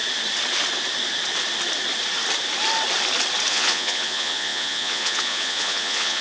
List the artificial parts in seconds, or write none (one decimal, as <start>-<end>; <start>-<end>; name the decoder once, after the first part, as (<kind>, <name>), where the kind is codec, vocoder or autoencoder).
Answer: 3.5-6.2 (vocoder, Vocos)